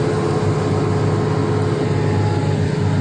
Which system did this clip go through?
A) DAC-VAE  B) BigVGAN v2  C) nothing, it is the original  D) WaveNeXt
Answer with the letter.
C